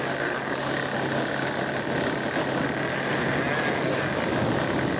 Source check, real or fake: real